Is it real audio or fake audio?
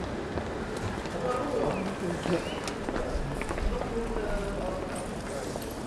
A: real